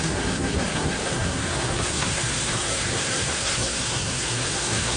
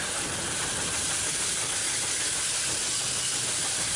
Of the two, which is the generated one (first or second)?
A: first